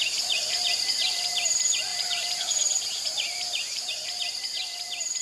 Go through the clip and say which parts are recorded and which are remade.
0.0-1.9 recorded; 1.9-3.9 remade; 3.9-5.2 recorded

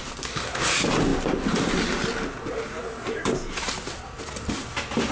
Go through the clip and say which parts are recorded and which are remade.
0.0-5.1 recorded

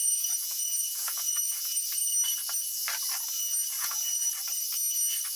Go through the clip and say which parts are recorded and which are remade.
0.0-2.0 remade; 2.0-3.8 recorded; 3.8-4.2 remade; 4.2-5.4 recorded

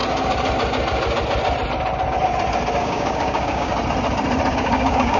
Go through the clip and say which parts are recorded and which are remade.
0.0-2.8 recorded; 2.8-3.7 remade; 3.7-4.5 recorded; 4.5-5.2 remade

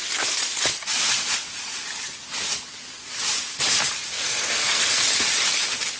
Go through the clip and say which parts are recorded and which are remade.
0.0-4.1 recorded; 4.1-5.0 remade; 5.0-6.0 recorded

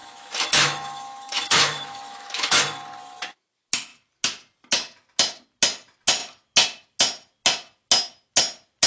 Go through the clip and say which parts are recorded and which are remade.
0.0-2.6 remade; 2.6-8.9 recorded

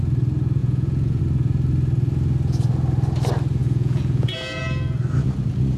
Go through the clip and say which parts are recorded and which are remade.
0.0-0.6 recorded; 0.6-1.2 remade; 1.2-3.6 recorded; 3.6-4.6 remade; 4.6-5.8 recorded

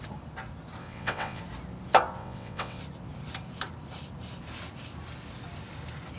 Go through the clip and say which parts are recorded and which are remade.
0.0-0.8 recorded; 0.8-1.4 remade; 1.4-2.2 recorded; 2.2-2.8 remade; 2.8-6.2 recorded